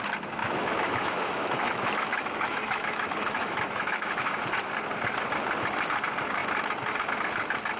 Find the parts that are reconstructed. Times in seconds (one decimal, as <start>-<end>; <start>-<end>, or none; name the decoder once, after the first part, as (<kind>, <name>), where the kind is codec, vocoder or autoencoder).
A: 0.4-4.3 (autoencoder, DAC-VAE)